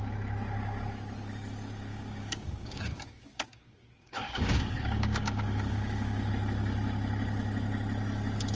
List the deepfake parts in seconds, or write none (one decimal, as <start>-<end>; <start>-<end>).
1.9-6.3